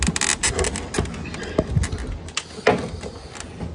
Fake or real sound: real